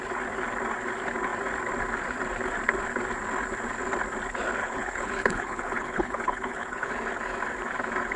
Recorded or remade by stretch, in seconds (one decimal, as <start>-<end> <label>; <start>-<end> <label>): 0.0-4.6 recorded; 4.6-6.9 remade; 6.9-8.2 recorded